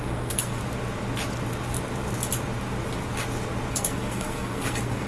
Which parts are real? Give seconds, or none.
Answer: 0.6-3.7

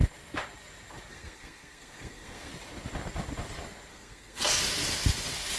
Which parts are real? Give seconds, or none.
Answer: 0.0-1.1; 2.5-3.9; 4.5-5.6